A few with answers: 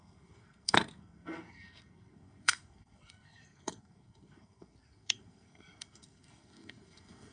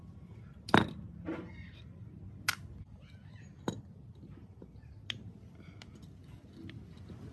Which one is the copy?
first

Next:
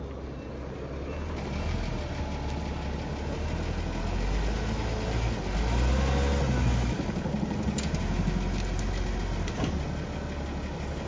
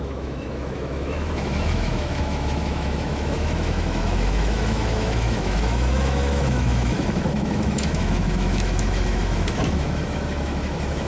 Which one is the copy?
second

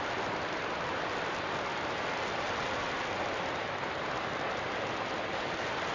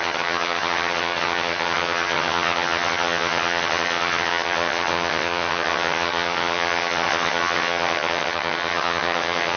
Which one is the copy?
second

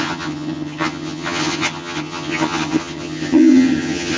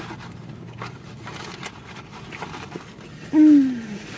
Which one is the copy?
first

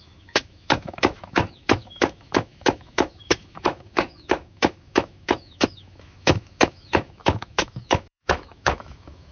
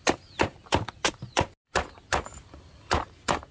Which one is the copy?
first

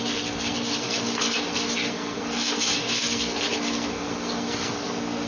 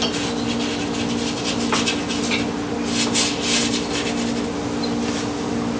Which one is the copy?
first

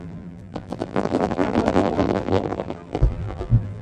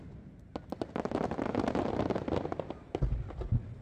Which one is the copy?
first